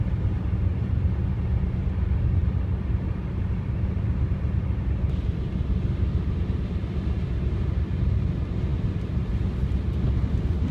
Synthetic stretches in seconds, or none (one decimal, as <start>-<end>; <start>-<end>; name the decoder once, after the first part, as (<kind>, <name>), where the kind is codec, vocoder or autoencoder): 2.4-6.2 (vocoder, BigVGAN v2); 8.7-9.3